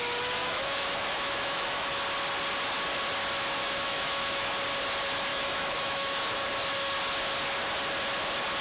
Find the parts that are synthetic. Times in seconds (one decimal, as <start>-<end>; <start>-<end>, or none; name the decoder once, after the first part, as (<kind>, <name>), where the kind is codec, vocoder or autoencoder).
0.4-1.9 (autoencoder, DAC-VAE); 3.6-4.5; 5.3-6.5